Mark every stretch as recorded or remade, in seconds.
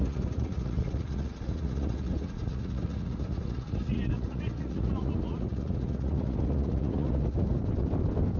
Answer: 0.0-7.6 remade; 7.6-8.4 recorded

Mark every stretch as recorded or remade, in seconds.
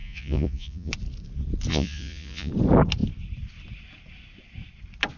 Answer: 0.0-0.9 remade; 0.9-1.7 recorded; 1.7-2.5 remade; 2.5-5.2 recorded